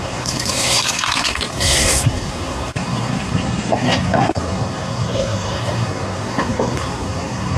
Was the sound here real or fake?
fake